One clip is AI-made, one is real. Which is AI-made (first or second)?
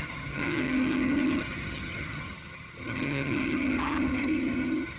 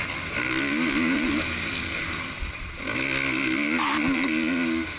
first